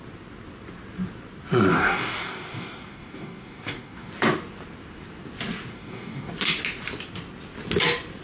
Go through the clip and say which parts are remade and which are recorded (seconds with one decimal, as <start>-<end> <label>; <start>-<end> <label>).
0.0-1.7 recorded; 1.7-4.1 remade; 4.1-5.7 recorded; 5.7-6.3 remade; 6.3-8.2 recorded